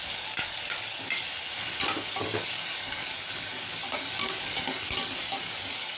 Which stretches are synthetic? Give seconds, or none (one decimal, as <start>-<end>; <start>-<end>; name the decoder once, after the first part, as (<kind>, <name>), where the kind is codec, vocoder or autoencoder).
0.0-1.3 (codec, DAC); 2.2-6.0